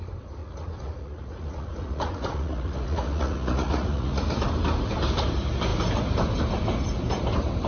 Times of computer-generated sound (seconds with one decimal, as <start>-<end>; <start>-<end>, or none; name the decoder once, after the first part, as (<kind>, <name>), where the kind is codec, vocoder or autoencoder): 0.4-4.2 (vocoder, Vocos)